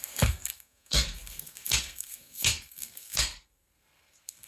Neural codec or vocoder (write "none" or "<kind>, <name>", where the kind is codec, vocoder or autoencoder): codec, SNAC